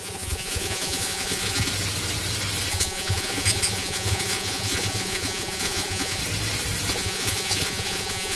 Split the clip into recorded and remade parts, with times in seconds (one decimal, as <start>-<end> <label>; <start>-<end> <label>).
0.0-1.7 remade; 1.7-2.7 recorded; 2.7-6.2 remade; 6.2-6.9 recorded; 6.9-8.4 remade